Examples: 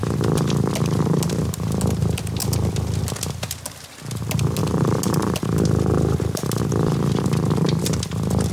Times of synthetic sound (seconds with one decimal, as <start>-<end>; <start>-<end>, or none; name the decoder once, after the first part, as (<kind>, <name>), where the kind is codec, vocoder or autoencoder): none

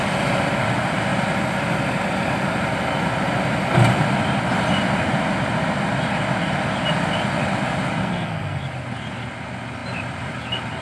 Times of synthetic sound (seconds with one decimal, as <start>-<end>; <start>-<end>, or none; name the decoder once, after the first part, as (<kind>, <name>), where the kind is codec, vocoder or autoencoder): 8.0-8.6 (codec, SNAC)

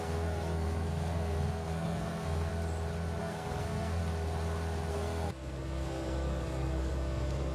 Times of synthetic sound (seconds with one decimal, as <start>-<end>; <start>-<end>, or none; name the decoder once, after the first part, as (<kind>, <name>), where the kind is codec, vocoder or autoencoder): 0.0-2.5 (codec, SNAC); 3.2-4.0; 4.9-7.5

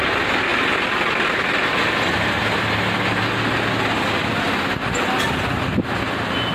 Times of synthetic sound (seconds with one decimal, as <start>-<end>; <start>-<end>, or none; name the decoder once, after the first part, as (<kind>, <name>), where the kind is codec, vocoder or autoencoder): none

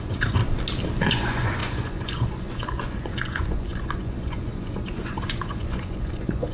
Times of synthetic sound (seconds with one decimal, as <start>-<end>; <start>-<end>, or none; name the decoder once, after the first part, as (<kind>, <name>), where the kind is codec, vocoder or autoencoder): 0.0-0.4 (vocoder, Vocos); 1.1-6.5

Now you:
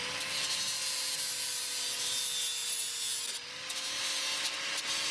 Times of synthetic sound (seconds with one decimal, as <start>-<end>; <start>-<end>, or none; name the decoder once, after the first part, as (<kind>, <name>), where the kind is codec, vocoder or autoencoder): none

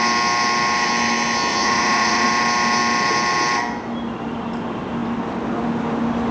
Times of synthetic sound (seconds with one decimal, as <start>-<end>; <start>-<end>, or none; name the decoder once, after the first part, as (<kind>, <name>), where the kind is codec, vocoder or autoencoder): 1.5-2.3 (vocoder, Vocos)

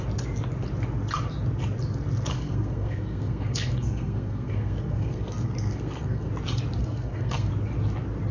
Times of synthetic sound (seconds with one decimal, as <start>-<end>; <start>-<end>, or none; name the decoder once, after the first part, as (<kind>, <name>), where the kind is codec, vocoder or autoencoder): 2.3-6.3 (codec, SNAC); 6.8-7.5